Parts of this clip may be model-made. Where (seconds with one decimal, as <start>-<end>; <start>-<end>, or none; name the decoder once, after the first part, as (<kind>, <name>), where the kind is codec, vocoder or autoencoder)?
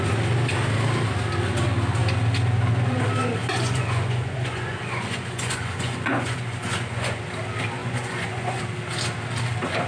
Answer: 3.4-7.2 (vocoder, Vocos); 7.8-8.6